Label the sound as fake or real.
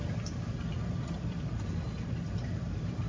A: fake